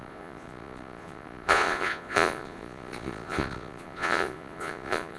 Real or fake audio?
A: fake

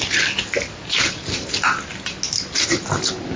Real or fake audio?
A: real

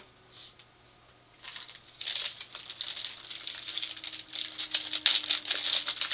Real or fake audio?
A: real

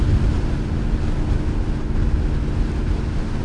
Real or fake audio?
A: real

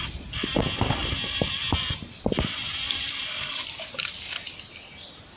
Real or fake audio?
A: real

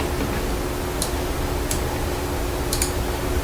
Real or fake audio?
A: real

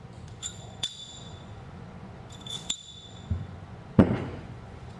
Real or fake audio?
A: fake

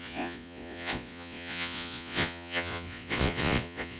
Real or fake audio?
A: fake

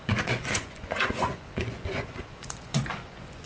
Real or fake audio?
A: fake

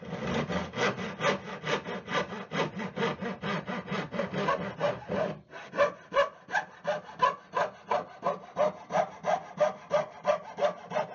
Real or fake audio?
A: real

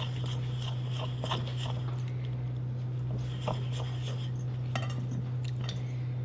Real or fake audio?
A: real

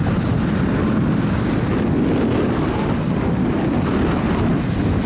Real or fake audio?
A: real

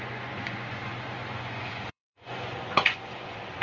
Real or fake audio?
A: fake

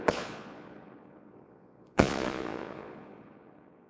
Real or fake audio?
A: fake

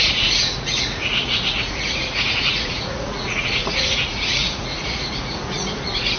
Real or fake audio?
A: fake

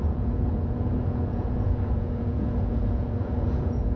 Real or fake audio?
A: fake